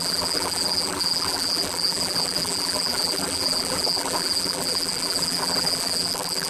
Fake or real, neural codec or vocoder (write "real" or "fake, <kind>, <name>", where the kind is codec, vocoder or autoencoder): fake, vocoder, BigVGAN v2